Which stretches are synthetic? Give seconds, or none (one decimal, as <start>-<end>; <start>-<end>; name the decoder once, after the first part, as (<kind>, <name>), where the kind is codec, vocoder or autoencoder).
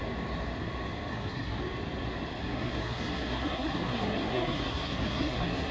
1.1-1.6 (codec, SNAC); 2.4-5.7